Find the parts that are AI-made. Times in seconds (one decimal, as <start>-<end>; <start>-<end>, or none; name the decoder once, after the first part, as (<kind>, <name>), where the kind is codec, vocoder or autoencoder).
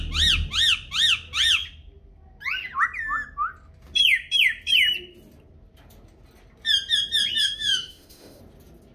7.4-8.4 (autoencoder, DAC-VAE)